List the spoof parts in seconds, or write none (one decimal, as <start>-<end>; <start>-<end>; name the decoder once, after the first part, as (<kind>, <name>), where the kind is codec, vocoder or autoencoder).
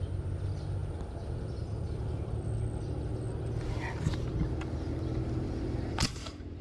none